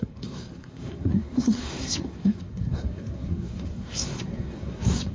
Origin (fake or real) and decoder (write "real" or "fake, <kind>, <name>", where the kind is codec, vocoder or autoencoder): fake, codec, SNAC